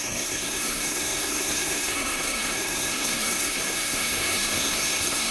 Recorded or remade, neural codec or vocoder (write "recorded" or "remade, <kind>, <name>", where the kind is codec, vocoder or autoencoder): remade, codec, SNAC